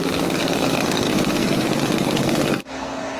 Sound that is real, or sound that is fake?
fake